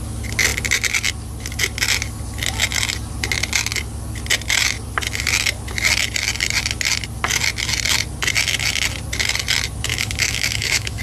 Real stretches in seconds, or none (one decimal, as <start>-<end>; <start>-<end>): 0.0-9.9